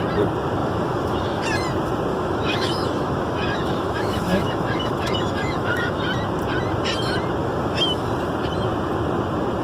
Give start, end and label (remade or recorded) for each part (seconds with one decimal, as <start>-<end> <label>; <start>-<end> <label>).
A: 0.0-0.6 recorded; 0.6-1.4 remade; 1.4-2.1 recorded; 2.1-6.0 remade; 6.0-7.4 recorded; 7.4-8.1 remade; 8.1-9.6 recorded